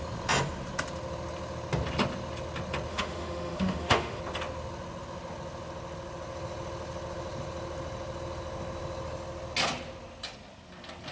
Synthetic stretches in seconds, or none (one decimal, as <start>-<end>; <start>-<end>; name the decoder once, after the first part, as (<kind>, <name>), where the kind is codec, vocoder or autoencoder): 2.9-4.2 (autoencoder, DAC-VAE)